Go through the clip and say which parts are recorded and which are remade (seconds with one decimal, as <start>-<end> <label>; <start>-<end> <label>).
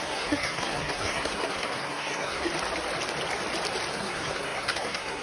0.0-2.5 remade; 2.5-3.9 recorded; 3.9-5.2 remade